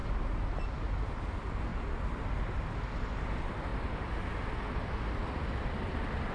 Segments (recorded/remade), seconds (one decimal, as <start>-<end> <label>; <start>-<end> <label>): 0.0-0.6 remade; 0.6-1.7 recorded; 1.7-2.6 remade; 2.6-3.7 recorded; 3.7-4.3 remade; 4.3-6.3 recorded

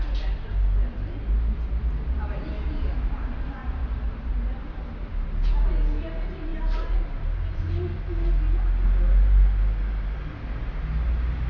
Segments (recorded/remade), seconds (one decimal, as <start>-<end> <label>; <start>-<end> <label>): 0.0-3.6 recorded; 3.6-5.7 remade; 5.7-6.5 recorded; 6.5-7.6 remade; 7.6-11.5 recorded